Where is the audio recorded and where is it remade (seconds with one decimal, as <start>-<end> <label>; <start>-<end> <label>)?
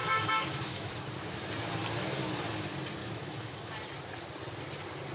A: 0.0-0.9 remade; 0.9-3.0 recorded; 3.0-3.7 remade; 3.7-5.1 recorded